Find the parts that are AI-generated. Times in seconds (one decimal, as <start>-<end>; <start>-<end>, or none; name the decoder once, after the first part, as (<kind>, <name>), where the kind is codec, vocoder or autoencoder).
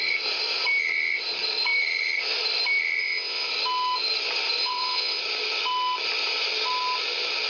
3.0-3.5 (vocoder, WaveNeXt); 4.6-5.2